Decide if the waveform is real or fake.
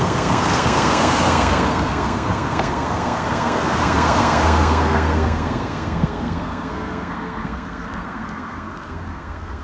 fake